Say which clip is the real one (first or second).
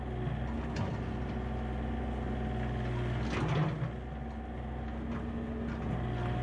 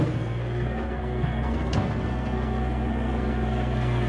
first